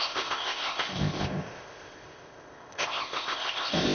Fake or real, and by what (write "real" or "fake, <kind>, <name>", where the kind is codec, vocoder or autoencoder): fake, codec, ZipCodec